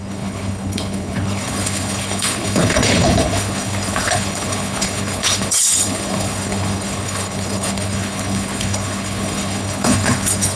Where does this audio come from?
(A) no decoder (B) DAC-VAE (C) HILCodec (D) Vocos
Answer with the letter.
C